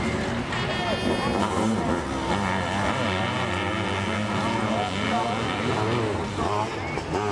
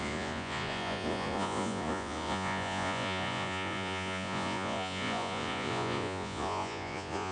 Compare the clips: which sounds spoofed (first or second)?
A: second